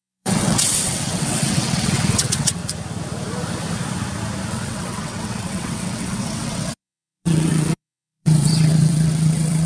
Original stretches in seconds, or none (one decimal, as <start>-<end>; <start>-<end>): 2.6-4.5